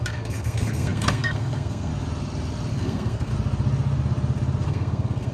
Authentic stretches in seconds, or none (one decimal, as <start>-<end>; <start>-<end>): 1.9-2.7; 3.3-4.7